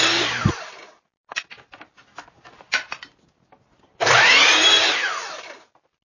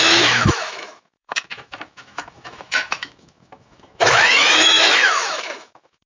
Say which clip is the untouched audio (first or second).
first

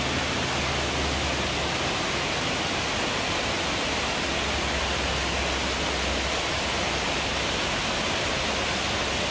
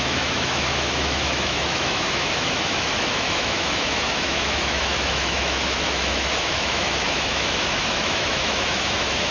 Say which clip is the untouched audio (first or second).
first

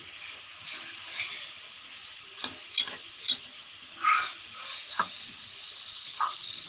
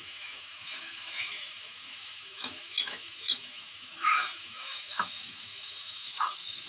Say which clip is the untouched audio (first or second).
first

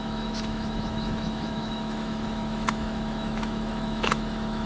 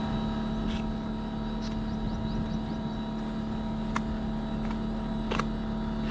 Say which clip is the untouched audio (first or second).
second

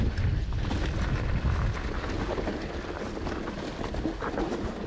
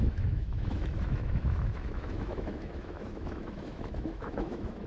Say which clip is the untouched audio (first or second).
first